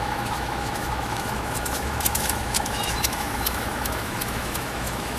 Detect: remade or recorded remade